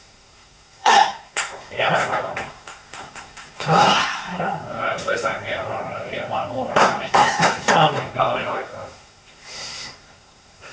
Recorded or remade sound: remade